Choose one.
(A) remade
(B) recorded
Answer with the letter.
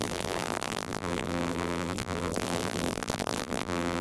A